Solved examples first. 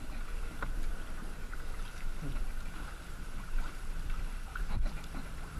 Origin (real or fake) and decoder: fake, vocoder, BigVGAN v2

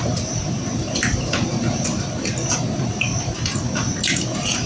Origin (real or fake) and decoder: fake, vocoder, BigVGAN v2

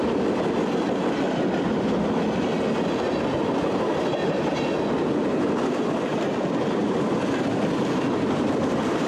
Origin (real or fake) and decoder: real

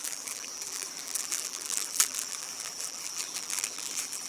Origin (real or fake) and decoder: fake, vocoder, BigVGAN v2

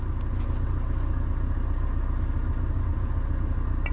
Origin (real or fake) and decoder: real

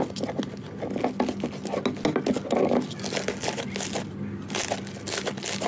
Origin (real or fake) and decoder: real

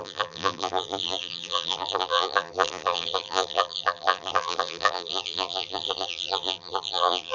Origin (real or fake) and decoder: fake, vocoder, BigVGAN v2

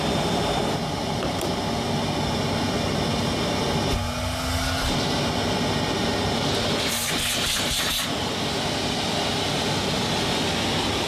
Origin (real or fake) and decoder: real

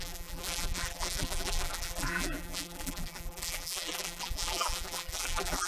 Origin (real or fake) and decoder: fake, vocoder, BigVGAN v2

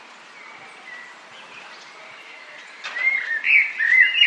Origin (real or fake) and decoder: fake, vocoder, BigVGAN v2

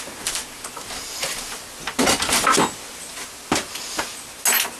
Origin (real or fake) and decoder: real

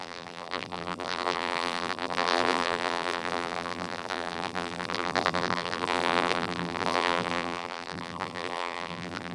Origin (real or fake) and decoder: fake, vocoder, BigVGAN v2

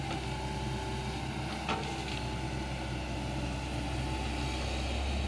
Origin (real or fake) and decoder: real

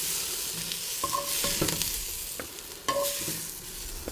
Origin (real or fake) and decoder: real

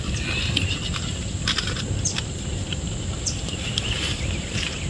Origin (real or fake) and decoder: fake, vocoder, BigVGAN v2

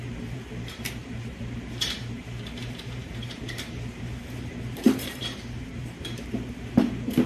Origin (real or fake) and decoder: fake, vocoder, BigVGAN v2